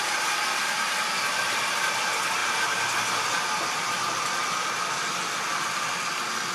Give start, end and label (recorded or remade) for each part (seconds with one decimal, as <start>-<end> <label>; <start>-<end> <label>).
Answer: 0.0-6.5 recorded